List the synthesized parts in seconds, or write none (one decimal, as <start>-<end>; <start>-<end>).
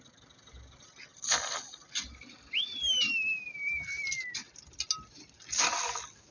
1.1-4.9